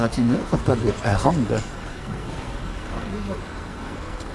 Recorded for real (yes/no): no